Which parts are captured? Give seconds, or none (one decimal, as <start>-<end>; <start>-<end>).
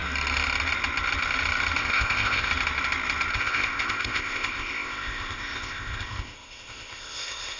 0.0-1.8; 2.5-3.3